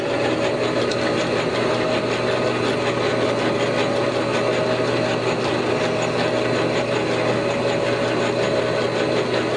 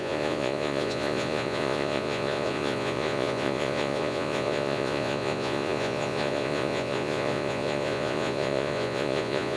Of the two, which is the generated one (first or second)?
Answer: second